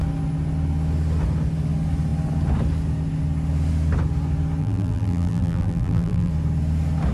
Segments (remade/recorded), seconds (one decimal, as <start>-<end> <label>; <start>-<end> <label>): 0.0-4.6 recorded; 4.6-6.3 remade; 6.3-7.1 recorded